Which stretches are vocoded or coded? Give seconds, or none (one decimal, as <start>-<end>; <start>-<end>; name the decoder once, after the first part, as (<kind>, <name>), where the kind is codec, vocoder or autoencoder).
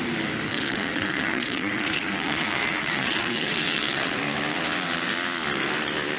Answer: 0.5-4.2 (vocoder, WaveNeXt)